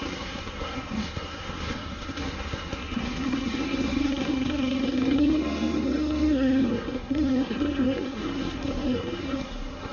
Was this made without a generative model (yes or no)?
no